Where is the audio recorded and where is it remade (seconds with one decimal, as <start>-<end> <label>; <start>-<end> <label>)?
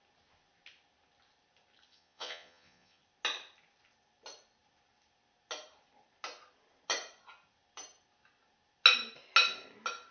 0.0-1.9 recorded; 1.9-3.0 remade; 3.0-10.1 recorded